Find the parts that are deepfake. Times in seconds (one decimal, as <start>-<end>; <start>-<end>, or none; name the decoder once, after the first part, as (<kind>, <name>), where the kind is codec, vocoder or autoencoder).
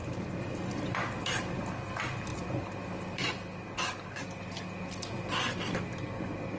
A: 0.0-1.0 (vocoder, BigVGAN v2)